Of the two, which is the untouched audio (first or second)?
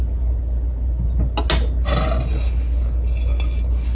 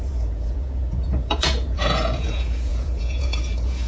first